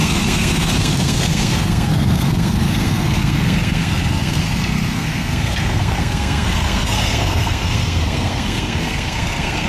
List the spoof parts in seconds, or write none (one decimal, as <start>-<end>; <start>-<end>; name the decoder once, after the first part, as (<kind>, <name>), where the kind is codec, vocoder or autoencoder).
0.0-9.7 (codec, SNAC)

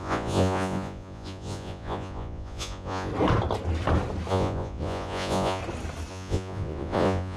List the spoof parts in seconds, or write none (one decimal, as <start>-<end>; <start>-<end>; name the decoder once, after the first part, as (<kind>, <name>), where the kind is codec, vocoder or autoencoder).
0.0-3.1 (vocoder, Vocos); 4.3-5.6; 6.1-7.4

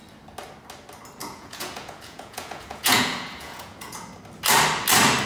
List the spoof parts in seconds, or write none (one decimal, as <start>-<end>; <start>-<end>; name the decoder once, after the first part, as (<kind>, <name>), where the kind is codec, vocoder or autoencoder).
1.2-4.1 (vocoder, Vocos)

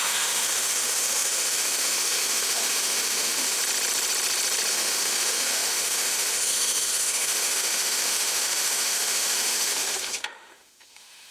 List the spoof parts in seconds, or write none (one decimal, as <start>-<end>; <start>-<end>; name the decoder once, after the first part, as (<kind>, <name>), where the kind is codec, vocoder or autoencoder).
0.0-3.6 (autoencoder, DAC-VAE); 4.7-11.3

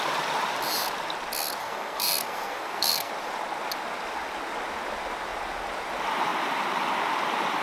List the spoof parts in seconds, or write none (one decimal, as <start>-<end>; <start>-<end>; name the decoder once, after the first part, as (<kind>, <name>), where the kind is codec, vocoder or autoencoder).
1.6-3.1 (codec, SNAC)

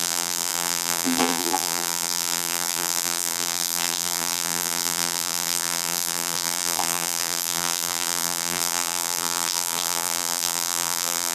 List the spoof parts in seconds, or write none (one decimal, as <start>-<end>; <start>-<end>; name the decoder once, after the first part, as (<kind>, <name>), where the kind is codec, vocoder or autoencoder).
0.0-11.3 (vocoder, BigVGAN v2)